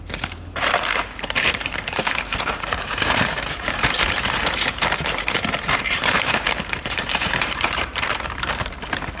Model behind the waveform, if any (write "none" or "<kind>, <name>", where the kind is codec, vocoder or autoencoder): vocoder, BigVGAN v2